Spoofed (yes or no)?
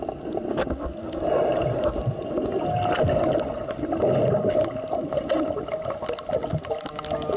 no